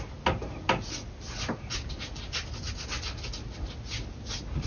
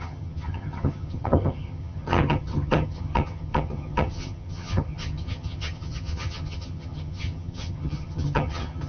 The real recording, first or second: first